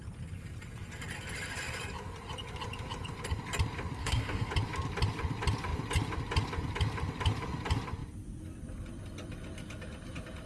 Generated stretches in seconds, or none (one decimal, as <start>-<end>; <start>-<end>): 4.0-4.5